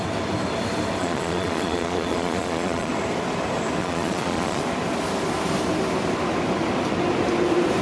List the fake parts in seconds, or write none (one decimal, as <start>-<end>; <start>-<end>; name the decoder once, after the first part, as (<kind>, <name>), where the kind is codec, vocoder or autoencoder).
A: 1.0-2.9 (vocoder, Vocos); 3.8-4.6